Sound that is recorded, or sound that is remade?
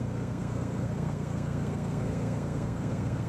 remade